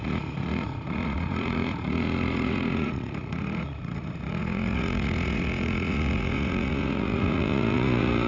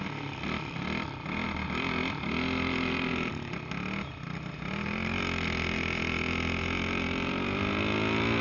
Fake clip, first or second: first